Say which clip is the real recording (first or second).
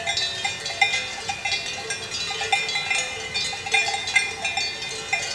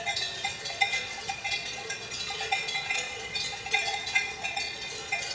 first